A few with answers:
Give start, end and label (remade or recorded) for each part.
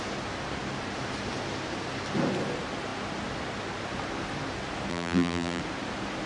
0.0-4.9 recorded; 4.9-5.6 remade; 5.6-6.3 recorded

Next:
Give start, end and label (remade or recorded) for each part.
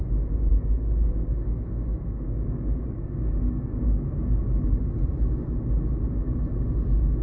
0.0-0.5 recorded; 0.5-4.8 remade; 4.8-7.2 recorded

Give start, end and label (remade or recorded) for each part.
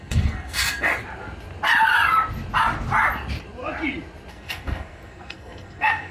0.0-0.9 remade; 0.9-4.3 recorded; 4.3-6.1 remade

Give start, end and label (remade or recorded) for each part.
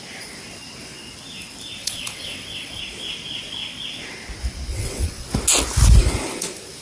0.0-1.8 recorded; 1.8-2.8 remade; 2.8-4.7 recorded; 4.7-5.3 remade; 5.3-6.8 recorded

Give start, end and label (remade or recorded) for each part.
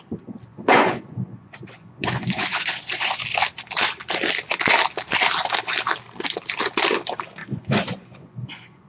0.0-0.5 recorded; 0.5-3.2 remade; 3.2-7.4 recorded; 7.4-8.9 remade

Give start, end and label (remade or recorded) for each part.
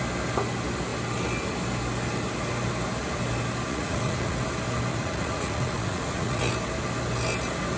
0.0-3.7 recorded; 3.7-4.4 remade; 4.4-4.9 recorded; 4.9-6.5 remade; 6.5-7.8 recorded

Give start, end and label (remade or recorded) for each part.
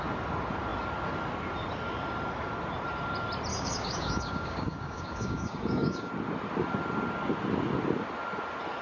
0.0-3.5 recorded; 3.5-6.1 remade; 6.1-8.8 recorded